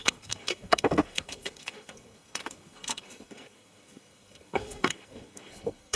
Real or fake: fake